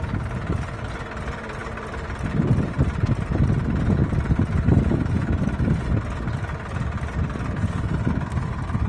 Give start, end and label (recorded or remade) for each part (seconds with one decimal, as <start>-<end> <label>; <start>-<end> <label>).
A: 0.0-8.9 recorded